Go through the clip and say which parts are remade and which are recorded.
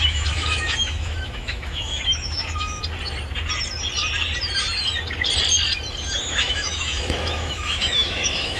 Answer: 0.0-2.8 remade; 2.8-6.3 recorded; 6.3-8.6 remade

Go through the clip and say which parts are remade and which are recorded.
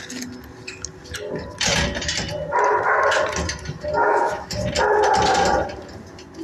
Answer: 0.0-4.0 recorded; 4.0-4.5 remade; 4.5-6.4 recorded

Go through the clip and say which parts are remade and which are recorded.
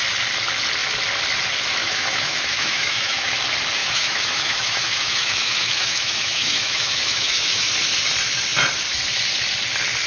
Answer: 0.0-1.8 recorded; 1.8-3.3 remade; 3.3-3.8 recorded; 3.8-7.7 remade; 7.7-10.1 recorded